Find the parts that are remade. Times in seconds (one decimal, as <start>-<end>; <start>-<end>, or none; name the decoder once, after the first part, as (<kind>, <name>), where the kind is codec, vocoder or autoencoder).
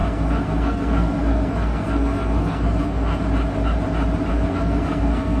0.0-3.2 (codec, SNAC); 4.3-5.4